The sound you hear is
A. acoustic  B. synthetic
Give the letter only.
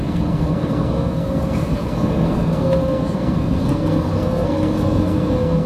B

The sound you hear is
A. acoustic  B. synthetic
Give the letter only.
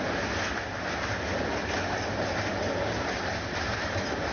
A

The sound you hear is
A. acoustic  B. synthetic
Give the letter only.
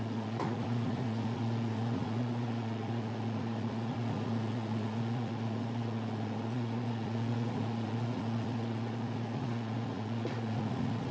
B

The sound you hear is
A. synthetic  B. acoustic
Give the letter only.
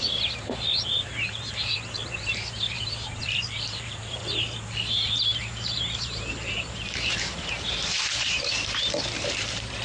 A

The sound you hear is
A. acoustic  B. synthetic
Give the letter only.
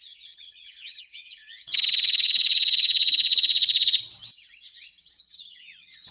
B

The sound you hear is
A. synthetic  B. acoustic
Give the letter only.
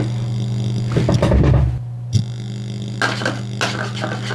B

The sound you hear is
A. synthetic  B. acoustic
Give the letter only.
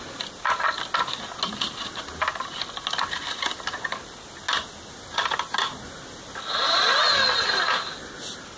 B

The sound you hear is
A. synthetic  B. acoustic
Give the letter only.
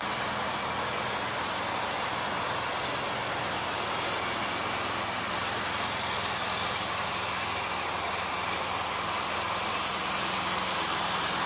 B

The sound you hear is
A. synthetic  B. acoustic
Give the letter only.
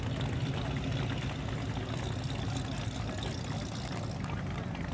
B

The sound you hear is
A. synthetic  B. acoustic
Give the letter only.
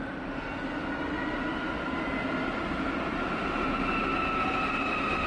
B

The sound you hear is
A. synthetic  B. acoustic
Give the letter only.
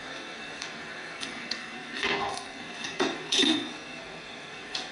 A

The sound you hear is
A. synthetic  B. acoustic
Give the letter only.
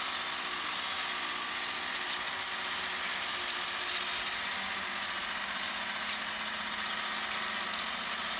B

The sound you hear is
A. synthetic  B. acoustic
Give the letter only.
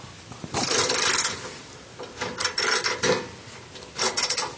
B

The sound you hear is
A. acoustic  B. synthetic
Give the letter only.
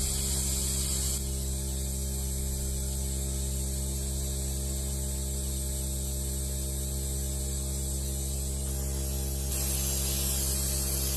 A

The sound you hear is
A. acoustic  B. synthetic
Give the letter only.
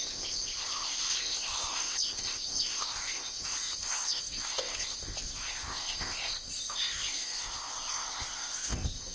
B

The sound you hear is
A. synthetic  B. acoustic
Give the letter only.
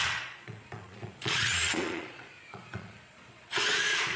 A